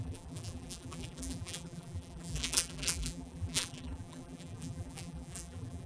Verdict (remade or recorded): remade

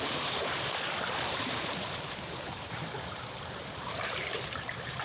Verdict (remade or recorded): remade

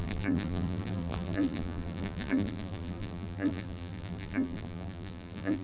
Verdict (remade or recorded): remade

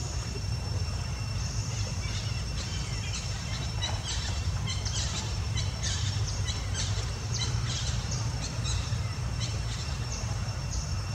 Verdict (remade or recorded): remade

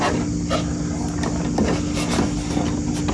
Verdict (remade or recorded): recorded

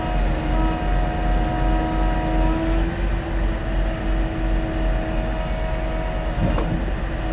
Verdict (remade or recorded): recorded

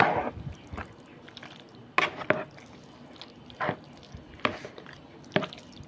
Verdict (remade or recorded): recorded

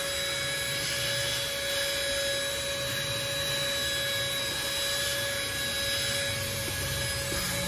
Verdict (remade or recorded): recorded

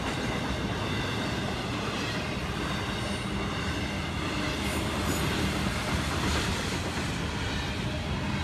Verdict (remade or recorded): recorded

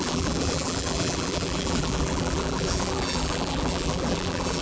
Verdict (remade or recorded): remade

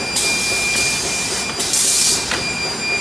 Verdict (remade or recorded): recorded